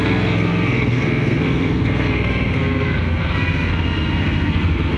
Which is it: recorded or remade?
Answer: remade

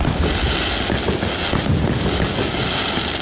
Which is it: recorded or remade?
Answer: recorded